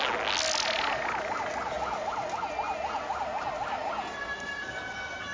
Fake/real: real